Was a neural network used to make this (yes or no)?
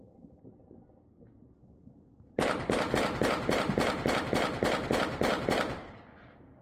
no